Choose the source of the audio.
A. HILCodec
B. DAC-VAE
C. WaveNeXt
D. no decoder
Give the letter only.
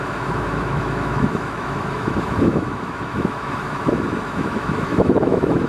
B